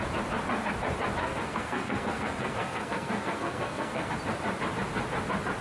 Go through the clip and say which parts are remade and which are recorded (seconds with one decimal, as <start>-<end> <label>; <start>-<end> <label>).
0.0-1.2 recorded; 1.2-4.1 remade; 4.1-5.6 recorded